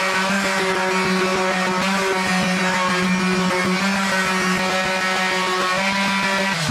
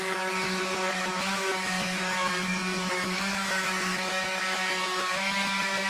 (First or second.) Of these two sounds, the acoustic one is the first